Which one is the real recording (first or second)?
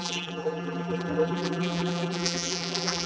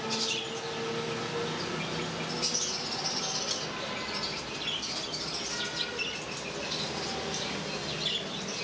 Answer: second